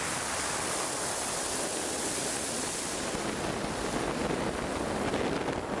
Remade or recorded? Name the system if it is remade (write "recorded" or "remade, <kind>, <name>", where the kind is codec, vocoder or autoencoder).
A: recorded